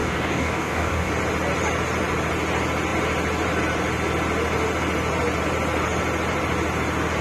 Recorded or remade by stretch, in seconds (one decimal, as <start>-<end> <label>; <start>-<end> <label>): 0.0-1.1 remade; 1.1-7.2 recorded